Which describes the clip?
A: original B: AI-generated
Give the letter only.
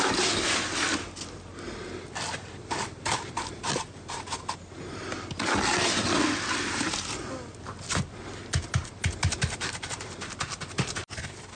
A